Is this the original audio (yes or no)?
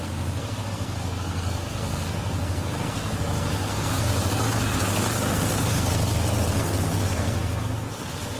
no